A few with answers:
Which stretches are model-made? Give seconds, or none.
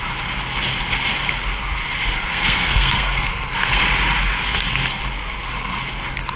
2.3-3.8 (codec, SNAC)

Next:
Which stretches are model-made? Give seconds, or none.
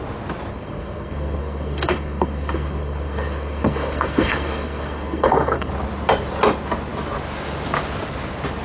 0.5-5.7 (codec, SNAC)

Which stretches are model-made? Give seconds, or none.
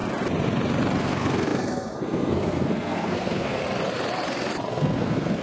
1.0-3.6 (codec, SNAC); 4.7-5.4